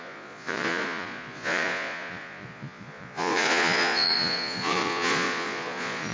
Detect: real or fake fake